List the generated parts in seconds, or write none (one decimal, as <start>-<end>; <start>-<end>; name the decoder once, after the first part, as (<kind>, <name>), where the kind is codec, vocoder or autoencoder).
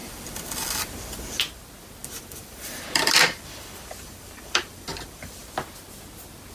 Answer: 0.0-1.4 (vocoder, BigVGAN v2); 2.0-5.4